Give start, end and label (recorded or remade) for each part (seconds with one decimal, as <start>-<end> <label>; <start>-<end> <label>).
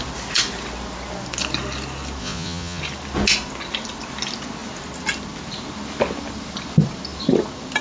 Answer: 0.0-2.2 recorded; 2.2-2.8 remade; 2.8-7.8 recorded